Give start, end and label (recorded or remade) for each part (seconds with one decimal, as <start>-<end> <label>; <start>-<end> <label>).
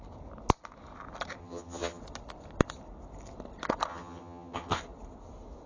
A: 0.0-1.4 recorded; 1.4-2.0 remade; 2.0-3.9 recorded; 3.9-4.8 remade; 4.8-5.7 recorded